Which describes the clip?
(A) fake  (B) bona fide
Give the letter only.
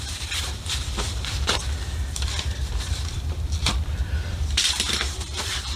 A